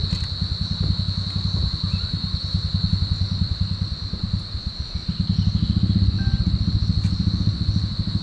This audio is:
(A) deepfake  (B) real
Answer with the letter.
B